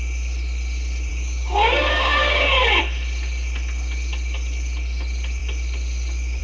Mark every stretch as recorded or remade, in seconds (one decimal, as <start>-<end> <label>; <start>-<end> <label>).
0.0-1.1 recorded; 1.1-2.8 remade; 2.8-6.4 recorded